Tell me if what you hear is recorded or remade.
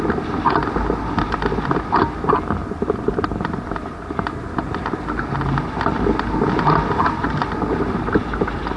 recorded